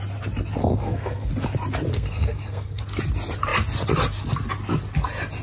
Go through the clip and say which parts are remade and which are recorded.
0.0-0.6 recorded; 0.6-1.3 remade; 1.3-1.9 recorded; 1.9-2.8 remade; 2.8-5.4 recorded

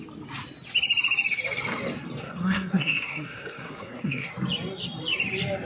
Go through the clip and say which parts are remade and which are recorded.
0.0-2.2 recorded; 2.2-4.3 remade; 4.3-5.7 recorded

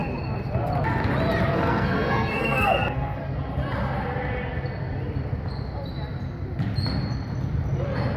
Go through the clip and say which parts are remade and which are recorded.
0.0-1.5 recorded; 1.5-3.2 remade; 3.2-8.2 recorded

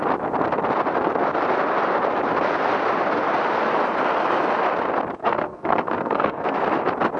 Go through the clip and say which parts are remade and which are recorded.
0.0-5.2 recorded; 5.2-6.6 remade; 6.6-7.2 recorded